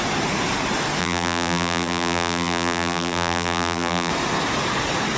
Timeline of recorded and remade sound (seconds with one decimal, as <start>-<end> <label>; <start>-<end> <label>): 0.0-1.0 recorded; 1.0-4.1 remade; 4.1-5.2 recorded